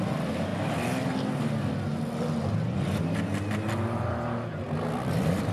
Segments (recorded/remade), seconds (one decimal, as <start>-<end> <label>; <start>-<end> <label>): 0.0-5.5 recorded